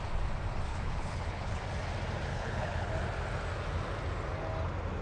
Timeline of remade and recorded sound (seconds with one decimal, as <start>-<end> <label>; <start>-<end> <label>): 0.0-0.7 recorded; 0.7-1.6 remade; 1.6-2.3 recorded; 2.3-2.9 remade; 2.9-5.0 recorded